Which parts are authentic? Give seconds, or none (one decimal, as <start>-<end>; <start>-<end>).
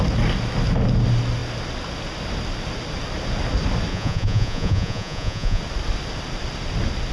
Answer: 0.0-3.9; 5.6-7.1